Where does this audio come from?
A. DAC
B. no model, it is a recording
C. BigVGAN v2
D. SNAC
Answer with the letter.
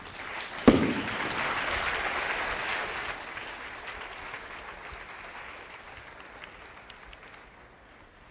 B